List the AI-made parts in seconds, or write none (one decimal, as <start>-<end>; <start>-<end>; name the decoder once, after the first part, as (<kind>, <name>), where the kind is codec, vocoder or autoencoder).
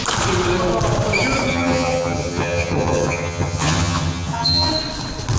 1.5-4.7 (vocoder, HiFi-GAN)